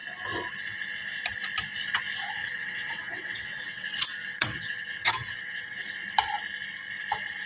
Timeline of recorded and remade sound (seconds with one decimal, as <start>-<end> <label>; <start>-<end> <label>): 0.0-2.4 recorded; 2.4-5.9 remade; 5.9-7.5 recorded